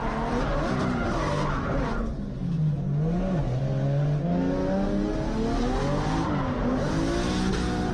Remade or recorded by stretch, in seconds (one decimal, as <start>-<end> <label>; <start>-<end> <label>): 0.0-7.9 recorded